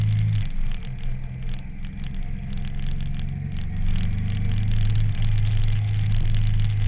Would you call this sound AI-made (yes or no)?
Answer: no